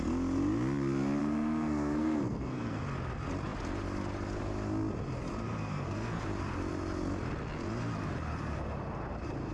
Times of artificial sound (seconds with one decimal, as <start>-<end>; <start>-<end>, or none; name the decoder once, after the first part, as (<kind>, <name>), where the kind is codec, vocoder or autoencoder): 1.2-2.8 (codec, SNAC); 5.6-6.2